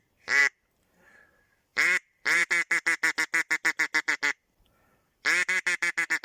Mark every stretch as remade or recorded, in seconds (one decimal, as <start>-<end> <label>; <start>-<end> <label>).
0.0-0.4 recorded; 0.4-0.9 remade; 0.9-1.7 recorded; 1.7-2.5 remade; 2.5-6.2 recorded